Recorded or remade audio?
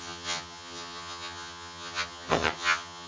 remade